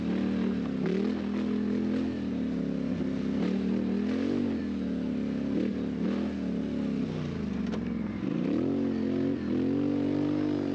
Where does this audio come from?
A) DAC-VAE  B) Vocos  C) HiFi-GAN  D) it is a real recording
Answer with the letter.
D